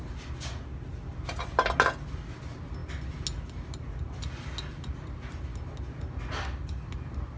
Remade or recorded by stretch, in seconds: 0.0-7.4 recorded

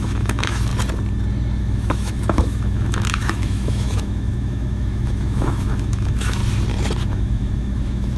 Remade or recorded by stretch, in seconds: 0.0-0.7 remade; 0.7-1.6 recorded; 1.6-6.4 remade; 6.4-7.0 recorded; 7.0-8.2 remade

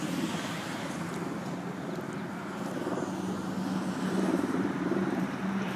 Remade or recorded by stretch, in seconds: 0.0-1.1 remade; 1.1-4.4 recorded; 4.4-5.8 remade

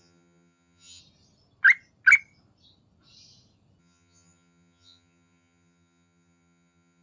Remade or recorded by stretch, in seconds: 0.0-1.0 remade; 1.0-3.8 recorded; 3.8-7.0 remade